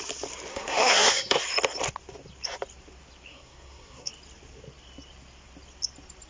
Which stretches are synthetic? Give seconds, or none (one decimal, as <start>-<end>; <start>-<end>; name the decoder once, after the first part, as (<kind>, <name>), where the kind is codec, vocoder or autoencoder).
0.5-1.4 (codec, SNAC); 3.3-4.1

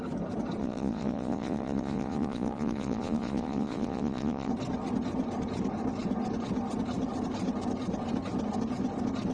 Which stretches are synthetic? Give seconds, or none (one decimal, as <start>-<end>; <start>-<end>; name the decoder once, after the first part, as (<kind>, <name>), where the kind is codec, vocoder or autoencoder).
0.6-4.5 (vocoder, Vocos)

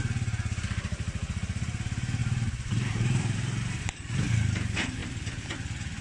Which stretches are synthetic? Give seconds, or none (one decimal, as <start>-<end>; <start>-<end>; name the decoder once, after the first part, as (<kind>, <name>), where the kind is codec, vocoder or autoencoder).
2.2-3.8 (vocoder, BigVGAN v2)